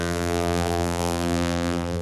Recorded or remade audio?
remade